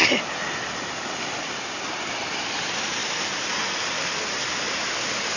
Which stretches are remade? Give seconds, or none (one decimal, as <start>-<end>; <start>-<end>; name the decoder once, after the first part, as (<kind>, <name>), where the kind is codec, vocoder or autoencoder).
0.0-2.5 (vocoder, BigVGAN v2); 3.0-3.7